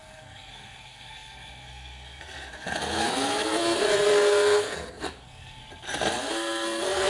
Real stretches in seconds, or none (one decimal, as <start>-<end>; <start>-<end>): 5.6-6.3